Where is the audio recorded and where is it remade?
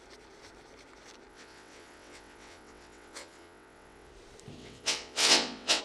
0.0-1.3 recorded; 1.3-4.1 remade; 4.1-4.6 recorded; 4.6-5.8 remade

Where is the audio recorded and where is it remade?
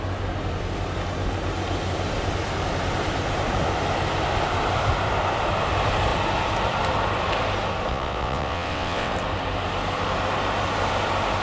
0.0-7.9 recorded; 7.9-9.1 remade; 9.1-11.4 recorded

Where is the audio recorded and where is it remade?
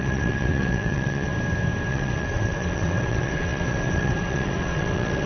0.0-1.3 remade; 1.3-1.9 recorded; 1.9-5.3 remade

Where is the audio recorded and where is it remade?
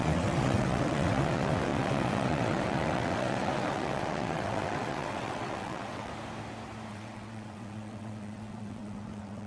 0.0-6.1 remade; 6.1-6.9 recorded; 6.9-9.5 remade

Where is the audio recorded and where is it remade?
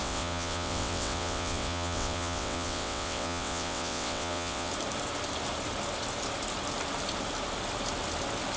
0.0-4.7 remade; 4.7-8.6 recorded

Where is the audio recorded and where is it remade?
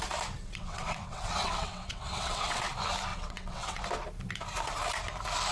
0.0-0.4 recorded; 0.4-2.7 remade; 2.7-3.1 recorded; 3.1-3.8 remade; 3.8-5.5 recorded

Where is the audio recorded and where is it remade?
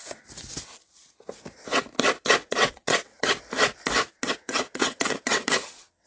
0.0-2.2 recorded; 2.2-3.1 remade; 3.1-4.3 recorded; 4.3-6.1 remade